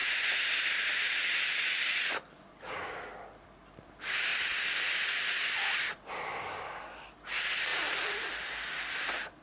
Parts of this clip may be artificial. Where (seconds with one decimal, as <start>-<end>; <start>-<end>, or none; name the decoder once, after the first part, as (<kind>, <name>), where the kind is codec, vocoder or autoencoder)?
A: none